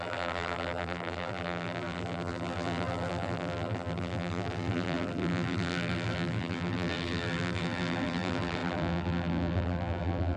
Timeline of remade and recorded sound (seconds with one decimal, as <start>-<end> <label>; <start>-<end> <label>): 0.0-10.4 remade